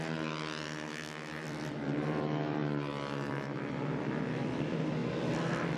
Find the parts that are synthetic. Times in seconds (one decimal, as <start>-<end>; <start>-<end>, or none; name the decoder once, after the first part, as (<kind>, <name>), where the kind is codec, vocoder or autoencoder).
0.0-2.6 (vocoder, BigVGAN v2); 3.3-5.0